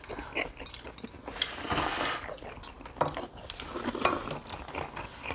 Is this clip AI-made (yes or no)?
no